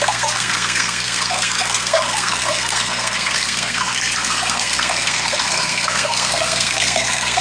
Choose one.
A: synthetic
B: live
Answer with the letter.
A